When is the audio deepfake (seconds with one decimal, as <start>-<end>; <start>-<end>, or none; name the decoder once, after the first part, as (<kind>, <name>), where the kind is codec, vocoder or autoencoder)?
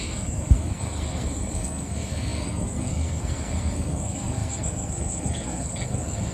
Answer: 0.0-6.3 (codec, SNAC)